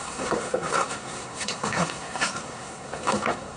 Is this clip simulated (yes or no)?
yes